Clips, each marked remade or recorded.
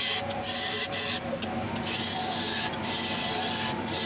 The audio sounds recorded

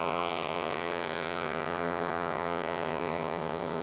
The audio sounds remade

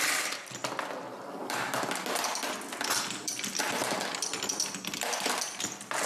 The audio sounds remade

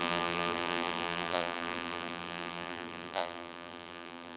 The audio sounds remade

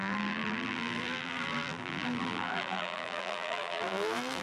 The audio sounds remade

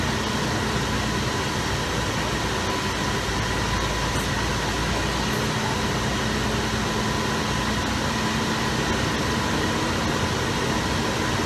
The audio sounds recorded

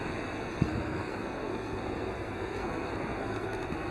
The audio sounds remade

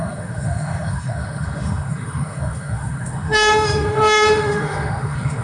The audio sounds remade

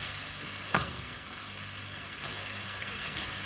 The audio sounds remade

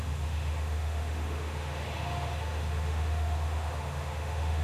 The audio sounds remade